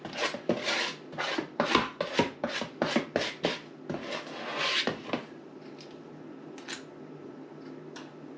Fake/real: real